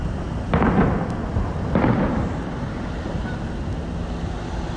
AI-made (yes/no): no